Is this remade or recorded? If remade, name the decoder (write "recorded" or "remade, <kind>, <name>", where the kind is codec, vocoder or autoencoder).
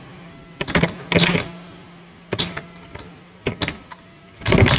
recorded